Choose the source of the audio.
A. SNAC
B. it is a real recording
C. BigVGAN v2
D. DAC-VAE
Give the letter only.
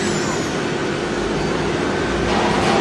B